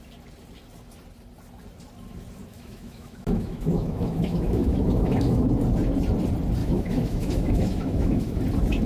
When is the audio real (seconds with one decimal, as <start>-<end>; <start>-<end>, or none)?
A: 0.0-2.5; 5.5-6.6; 8.4-8.9